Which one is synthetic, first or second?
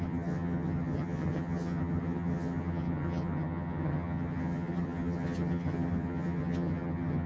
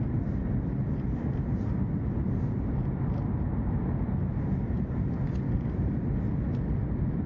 first